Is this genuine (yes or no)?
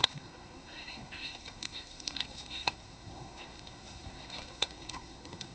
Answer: no